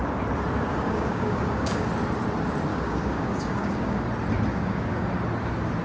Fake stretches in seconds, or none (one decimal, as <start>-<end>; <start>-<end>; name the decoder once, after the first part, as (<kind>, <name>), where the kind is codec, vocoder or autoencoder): 0.7-1.9 (codec, DAC); 2.7-4.1; 4.5-5.1

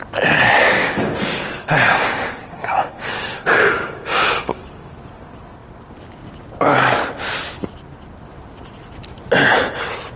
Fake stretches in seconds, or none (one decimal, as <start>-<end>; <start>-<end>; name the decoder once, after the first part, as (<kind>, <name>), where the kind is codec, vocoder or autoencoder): 0.8-4.9 (codec, DAC)

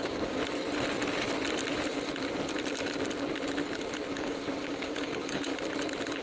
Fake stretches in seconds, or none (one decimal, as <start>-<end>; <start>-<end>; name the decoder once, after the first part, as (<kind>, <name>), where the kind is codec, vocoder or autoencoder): 0.0-0.4 (codec, DAC); 4.1-5.5

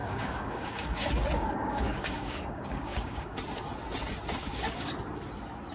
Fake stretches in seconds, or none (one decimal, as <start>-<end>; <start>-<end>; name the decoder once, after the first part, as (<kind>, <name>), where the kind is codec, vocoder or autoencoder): 0.0-3.4 (codec, DAC); 4.4-4.9

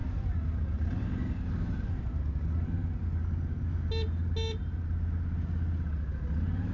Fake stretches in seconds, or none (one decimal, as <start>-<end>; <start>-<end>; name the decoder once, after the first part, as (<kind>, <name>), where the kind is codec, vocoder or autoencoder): 3.2-3.9 (codec, DAC)

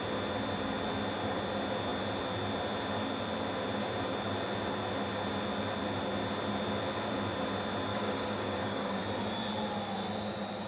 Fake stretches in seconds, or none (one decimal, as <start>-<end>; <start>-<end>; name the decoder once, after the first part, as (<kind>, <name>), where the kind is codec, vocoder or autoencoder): 7.9-9.0 (codec, DAC)

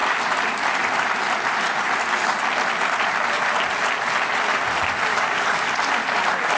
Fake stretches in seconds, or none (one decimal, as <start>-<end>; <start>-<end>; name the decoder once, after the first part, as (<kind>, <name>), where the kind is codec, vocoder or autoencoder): 5.1-5.7 (codec, DAC)

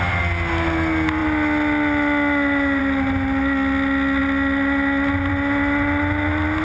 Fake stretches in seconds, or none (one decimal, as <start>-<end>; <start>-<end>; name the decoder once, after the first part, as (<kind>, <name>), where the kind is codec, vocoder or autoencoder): none